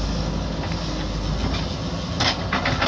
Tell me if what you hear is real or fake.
real